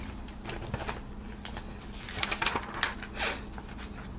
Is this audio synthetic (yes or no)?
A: no